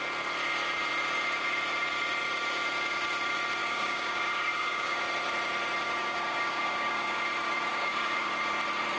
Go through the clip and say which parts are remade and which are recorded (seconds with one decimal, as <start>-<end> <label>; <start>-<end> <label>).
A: 0.0-3.6 recorded; 3.6-5.0 remade; 5.0-6.0 recorded; 6.0-7.2 remade; 7.2-7.7 recorded; 7.7-8.3 remade; 8.3-9.0 recorded